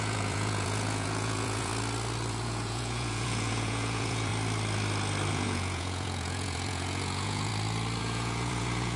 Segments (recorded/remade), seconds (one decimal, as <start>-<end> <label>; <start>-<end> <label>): 0.0-1.7 remade; 1.7-2.3 recorded; 2.3-4.3 remade; 4.3-5.3 recorded; 5.3-7.5 remade; 7.5-8.0 recorded; 8.0-9.0 remade